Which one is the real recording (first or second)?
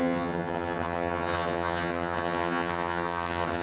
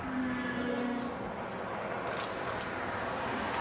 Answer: second